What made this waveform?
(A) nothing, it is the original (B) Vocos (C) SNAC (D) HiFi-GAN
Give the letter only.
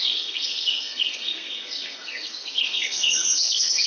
C